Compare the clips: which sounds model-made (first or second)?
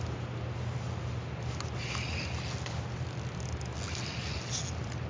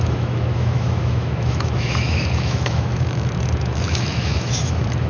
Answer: second